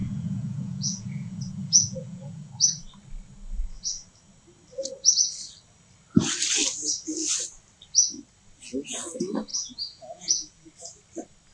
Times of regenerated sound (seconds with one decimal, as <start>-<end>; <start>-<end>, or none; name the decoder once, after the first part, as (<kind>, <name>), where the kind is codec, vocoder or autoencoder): 0.0-2.5 (vocoder, Vocos); 9.5-10.7

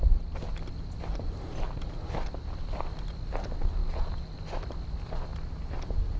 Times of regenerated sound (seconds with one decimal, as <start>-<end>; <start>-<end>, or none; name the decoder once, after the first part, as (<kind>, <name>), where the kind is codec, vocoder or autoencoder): 3.8-4.4 (vocoder, Vocos)

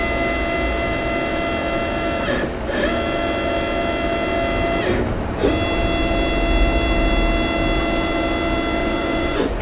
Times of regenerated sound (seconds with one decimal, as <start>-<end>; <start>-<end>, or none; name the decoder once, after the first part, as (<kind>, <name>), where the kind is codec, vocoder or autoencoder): 8.8-9.6 (vocoder, Vocos)

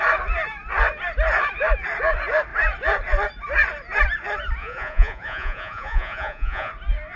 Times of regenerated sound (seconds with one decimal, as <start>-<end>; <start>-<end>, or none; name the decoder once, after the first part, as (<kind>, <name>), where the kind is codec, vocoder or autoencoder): 4.6-6.7 (vocoder, Vocos)

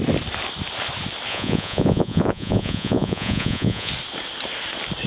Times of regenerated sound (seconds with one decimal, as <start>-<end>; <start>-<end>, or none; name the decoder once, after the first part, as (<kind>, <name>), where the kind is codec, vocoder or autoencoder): 1.3-3.9 (vocoder, Vocos)

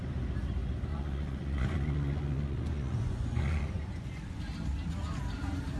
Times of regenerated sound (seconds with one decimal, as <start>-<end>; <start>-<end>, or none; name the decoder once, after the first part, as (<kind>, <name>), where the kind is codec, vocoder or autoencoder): 0.9-4.4 (vocoder, Vocos)

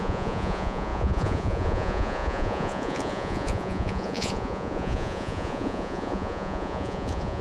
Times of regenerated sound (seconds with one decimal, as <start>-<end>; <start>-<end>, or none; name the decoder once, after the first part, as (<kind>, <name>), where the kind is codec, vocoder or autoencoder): 0.0-7.4 (vocoder, Vocos)

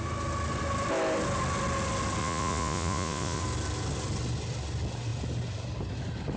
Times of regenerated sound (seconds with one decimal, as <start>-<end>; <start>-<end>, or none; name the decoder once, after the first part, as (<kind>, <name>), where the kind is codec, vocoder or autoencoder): 2.2-3.4 (vocoder, Vocos)